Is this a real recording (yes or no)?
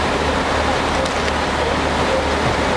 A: yes